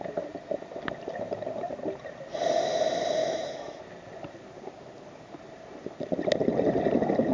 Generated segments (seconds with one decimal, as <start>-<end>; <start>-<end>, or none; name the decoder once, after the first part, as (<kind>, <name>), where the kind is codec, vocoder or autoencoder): 3.2-3.8 (autoencoder, DAC-VAE)